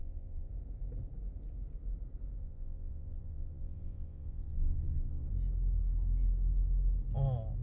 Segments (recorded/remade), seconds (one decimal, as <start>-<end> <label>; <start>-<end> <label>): 0.0-0.5 remade; 0.5-2.4 recorded; 2.4-5.3 remade; 5.3-7.6 recorded